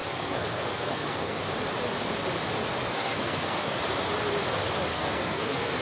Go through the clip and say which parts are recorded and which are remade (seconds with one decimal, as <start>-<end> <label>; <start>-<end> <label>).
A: 0.0-1.4 remade; 1.4-2.9 recorded; 2.9-3.8 remade; 3.8-4.9 recorded; 4.9-5.8 remade